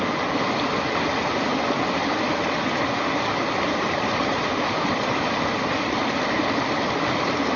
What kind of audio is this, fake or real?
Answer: real